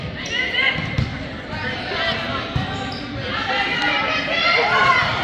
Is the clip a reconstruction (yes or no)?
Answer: yes